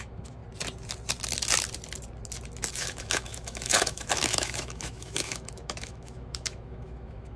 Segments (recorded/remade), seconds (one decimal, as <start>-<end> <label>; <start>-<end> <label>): 0.0-0.4 remade; 0.4-2.7 recorded; 2.7-7.4 remade